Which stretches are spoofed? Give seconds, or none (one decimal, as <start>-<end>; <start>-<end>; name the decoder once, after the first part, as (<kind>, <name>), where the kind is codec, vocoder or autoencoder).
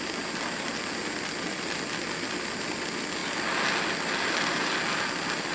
none